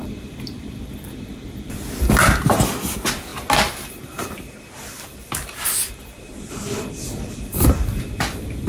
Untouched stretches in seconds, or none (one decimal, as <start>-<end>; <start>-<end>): 0.0-8.7